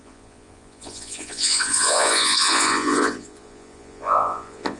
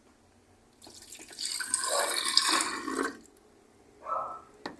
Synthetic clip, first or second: first